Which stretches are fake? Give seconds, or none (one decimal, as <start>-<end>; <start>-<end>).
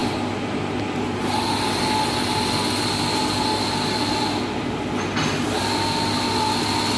none